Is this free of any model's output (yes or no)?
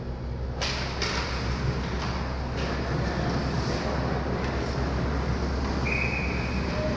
yes